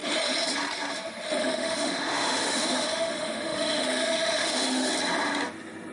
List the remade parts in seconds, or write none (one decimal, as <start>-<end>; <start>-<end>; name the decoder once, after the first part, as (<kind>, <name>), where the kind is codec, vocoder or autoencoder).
1.4-4.9 (autoencoder, DAC-VAE)